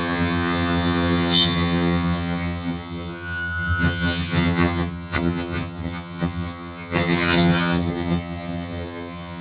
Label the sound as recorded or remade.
remade